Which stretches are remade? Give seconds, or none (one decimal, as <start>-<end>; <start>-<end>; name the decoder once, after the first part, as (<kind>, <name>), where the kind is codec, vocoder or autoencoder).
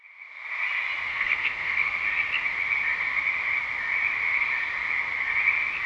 1.1-2.0 (codec, SNAC)